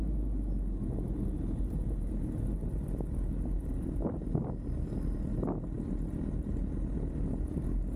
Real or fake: real